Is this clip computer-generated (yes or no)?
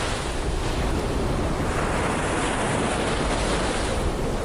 no